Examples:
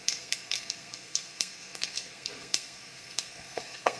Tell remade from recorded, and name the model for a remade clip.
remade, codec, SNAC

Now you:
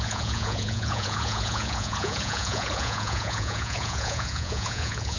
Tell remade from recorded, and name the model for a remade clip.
remade, vocoder, Vocos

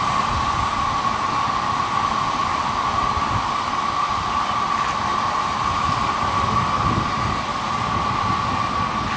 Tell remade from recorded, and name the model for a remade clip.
recorded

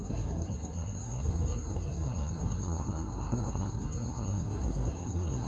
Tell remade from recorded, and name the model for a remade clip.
remade, codec, SNAC